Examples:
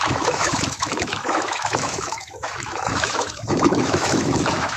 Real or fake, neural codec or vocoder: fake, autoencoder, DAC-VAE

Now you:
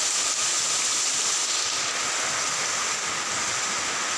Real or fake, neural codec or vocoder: real